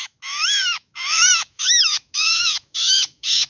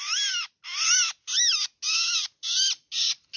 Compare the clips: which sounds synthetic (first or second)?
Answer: first